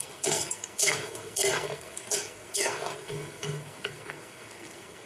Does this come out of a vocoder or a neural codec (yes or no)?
yes